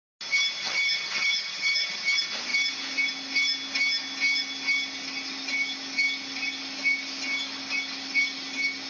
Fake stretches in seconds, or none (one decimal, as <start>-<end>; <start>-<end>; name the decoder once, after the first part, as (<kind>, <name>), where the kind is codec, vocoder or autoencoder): 0.6-2.0 (vocoder, HiFi-GAN)